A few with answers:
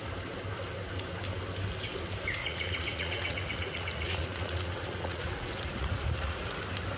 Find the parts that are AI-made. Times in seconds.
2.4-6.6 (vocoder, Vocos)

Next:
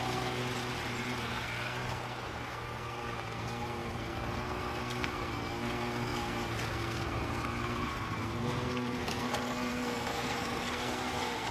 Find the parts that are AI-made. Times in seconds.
0.0-0.4 (codec, SNAC); 1.2-11.5